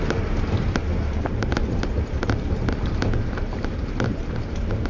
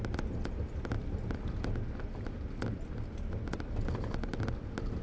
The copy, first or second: first